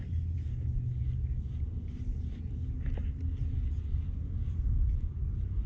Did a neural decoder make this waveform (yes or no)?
no